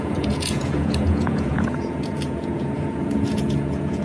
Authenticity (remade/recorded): remade